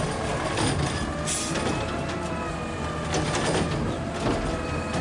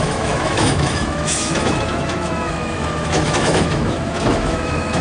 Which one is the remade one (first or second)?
second